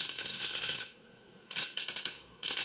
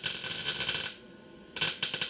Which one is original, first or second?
second